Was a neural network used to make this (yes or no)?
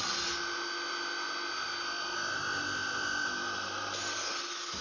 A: no